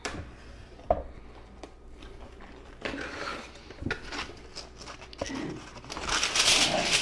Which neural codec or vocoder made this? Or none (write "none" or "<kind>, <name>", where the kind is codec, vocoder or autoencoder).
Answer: none